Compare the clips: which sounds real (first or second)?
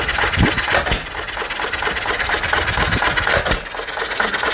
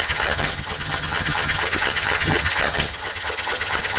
first